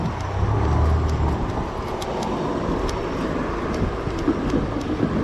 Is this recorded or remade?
recorded